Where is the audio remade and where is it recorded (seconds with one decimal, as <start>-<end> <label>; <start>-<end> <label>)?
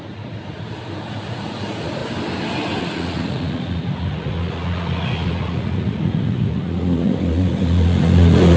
0.0-2.0 remade; 2.0-2.8 recorded; 2.8-8.6 remade